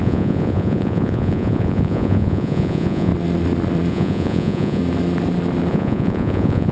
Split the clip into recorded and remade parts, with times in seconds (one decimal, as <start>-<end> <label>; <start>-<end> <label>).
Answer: 0.0-3.1 remade; 3.1-3.9 recorded; 3.9-4.8 remade; 4.8-5.7 recorded; 5.7-6.7 remade